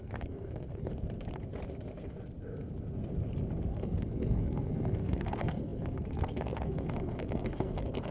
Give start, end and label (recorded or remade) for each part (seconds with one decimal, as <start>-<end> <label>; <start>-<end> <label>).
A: 0.0-0.9 remade; 0.9-3.7 recorded; 3.7-8.1 remade

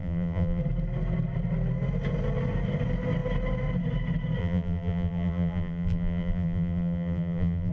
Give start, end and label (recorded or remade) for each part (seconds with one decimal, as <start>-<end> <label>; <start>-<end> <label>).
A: 0.0-0.6 remade; 0.6-4.4 recorded; 4.4-7.7 remade